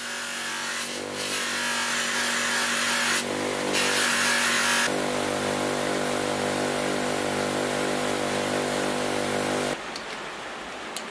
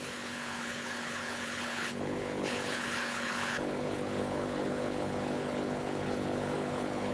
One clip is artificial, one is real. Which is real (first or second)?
first